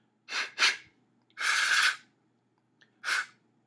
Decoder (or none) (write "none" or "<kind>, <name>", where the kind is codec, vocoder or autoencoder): none